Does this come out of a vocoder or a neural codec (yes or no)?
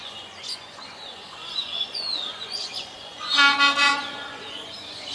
yes